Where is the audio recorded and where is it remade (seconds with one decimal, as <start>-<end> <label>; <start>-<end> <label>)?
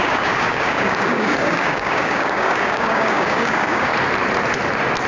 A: 0.0-3.9 remade; 3.9-5.1 recorded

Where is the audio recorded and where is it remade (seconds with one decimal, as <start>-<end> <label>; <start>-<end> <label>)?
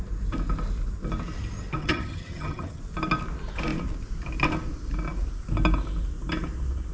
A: 0.0-1.8 recorded; 1.8-2.8 remade; 2.8-6.9 recorded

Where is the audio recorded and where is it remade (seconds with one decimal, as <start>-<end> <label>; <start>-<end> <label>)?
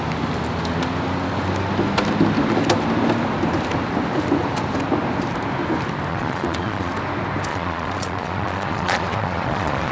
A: 0.0-6.1 recorded; 6.1-6.9 remade; 6.9-7.5 recorded; 7.5-9.9 remade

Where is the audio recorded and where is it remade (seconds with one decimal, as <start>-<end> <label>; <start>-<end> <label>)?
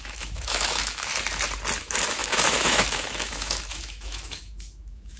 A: 0.0-1.1 remade; 1.1-1.8 recorded; 1.8-5.2 remade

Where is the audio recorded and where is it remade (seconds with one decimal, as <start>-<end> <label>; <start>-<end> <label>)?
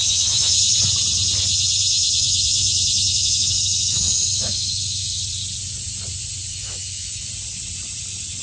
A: 0.0-0.6 remade; 0.6-2.0 recorded; 2.0-5.2 remade; 5.2-6.5 recorded; 6.5-7.3 remade; 7.3-8.4 recorded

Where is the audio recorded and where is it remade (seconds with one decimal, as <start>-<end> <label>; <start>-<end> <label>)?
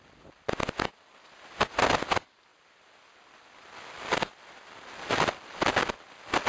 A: 0.0-6.5 recorded